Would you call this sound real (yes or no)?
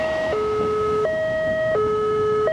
no